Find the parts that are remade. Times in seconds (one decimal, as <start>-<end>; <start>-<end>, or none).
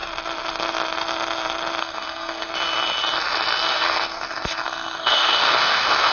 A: 1.8-2.5; 3.7-6.1